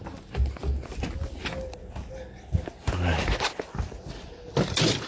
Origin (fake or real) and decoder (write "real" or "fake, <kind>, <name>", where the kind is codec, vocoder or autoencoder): real